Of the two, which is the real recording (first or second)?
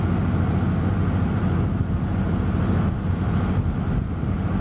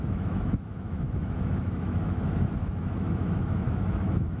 first